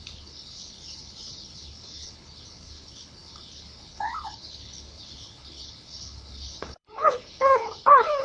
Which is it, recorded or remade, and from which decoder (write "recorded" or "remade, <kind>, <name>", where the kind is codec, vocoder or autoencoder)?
remade, codec, HILCodec